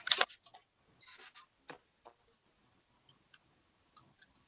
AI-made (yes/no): no